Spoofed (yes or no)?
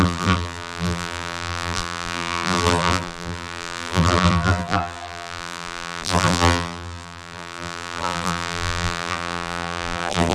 yes